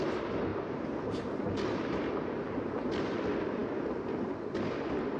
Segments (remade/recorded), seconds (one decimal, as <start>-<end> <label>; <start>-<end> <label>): 0.0-0.5 recorded; 0.5-3.2 remade; 3.2-5.2 recorded